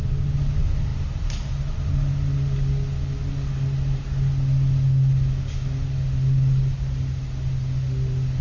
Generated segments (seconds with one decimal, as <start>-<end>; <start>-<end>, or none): none

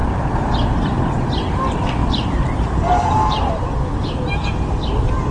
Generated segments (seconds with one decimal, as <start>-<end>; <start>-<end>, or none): 2.0-3.5

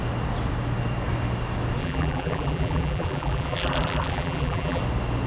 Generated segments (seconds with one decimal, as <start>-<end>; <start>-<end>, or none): 1.8-4.8

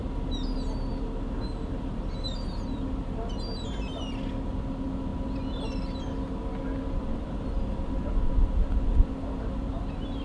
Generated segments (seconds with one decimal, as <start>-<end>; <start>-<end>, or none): none

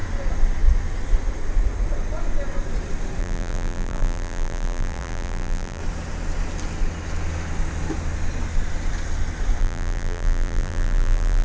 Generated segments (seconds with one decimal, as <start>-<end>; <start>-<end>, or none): 3.2-5.8; 9.6-11.4

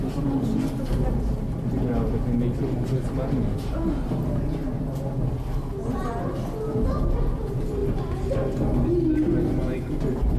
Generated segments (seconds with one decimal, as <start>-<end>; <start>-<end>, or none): none